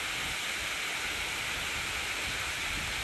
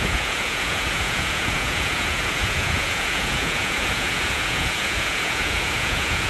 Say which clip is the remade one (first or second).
second